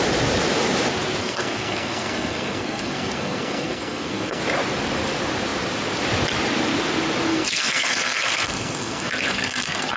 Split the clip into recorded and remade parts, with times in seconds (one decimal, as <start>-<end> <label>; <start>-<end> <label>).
0.0-1.2 recorded; 1.2-4.4 remade; 4.4-7.3 recorded; 7.3-10.0 remade